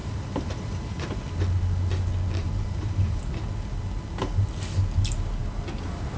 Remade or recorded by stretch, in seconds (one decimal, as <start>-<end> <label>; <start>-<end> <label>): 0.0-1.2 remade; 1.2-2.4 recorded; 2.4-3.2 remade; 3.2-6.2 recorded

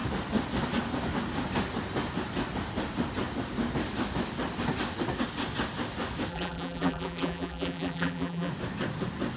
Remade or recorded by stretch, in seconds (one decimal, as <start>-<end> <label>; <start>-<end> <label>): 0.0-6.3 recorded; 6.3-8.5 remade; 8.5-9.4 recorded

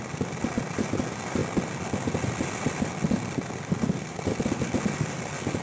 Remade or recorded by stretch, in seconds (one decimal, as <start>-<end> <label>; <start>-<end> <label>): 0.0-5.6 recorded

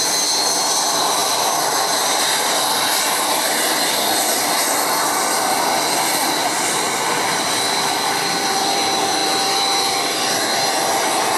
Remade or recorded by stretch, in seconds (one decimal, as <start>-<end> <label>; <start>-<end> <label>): 0.0-6.4 remade; 6.4-8.1 recorded; 8.1-11.4 remade

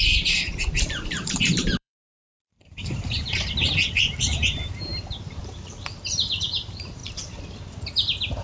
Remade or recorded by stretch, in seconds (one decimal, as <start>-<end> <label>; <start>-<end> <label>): 0.0-4.9 remade; 4.9-5.4 recorded; 5.4-7.0 remade; 7.0-8.4 recorded

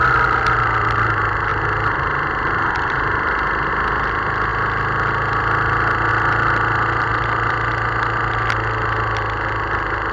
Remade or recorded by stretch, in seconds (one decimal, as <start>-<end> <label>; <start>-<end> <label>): 0.0-1.5 recorded; 1.5-3.7 remade; 3.7-7.1 recorded; 7.1-7.7 remade; 7.7-10.1 recorded

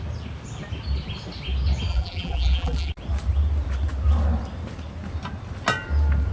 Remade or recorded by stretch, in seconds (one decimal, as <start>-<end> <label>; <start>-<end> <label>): 0.0-1.9 recorded; 1.9-2.9 remade; 2.9-6.3 recorded

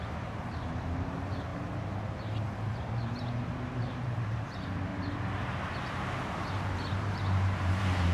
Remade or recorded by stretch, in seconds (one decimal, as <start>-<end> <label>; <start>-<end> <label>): 0.0-4.9 remade; 4.9-6.3 recorded; 6.3-8.1 remade